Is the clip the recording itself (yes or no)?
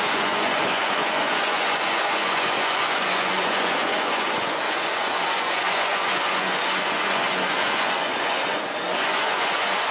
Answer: no